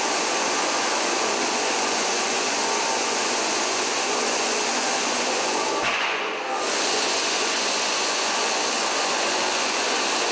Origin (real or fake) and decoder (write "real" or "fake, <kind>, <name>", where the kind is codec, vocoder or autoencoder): fake, vocoder, Vocos